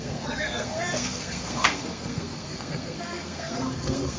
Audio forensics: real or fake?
fake